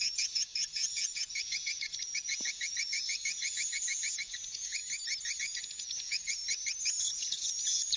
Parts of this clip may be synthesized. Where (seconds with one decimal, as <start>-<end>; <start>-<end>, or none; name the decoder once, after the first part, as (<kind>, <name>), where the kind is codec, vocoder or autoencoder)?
0.0-4.8 (vocoder, Vocos); 5.4-6.4; 7.0-8.0